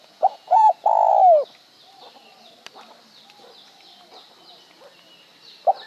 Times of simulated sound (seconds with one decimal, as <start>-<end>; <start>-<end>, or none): 0.0-1.1